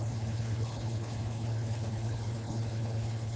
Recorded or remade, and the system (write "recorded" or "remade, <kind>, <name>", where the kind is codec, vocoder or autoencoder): remade, codec, HILCodec